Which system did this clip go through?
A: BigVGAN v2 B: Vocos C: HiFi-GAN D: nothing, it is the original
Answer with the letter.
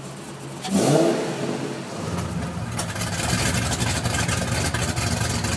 D